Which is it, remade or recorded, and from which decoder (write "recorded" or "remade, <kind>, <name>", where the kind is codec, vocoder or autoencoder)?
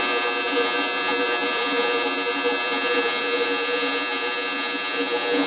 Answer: remade, vocoder, Vocos